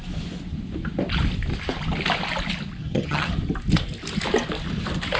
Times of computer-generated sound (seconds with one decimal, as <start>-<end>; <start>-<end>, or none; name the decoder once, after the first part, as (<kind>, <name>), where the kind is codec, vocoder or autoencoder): 2.8-3.3 (vocoder, HiFi-GAN)